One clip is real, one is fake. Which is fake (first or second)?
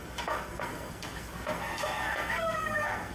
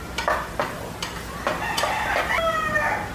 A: first